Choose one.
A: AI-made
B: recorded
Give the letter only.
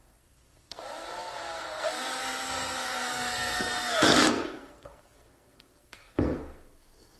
A